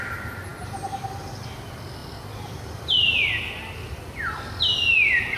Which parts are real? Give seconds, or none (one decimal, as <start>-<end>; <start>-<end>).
0.0-5.4